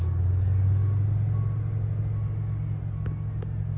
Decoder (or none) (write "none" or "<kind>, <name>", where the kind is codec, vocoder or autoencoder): none